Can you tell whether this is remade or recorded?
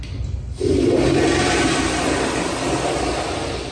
recorded